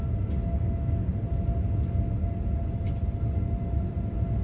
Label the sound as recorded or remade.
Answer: recorded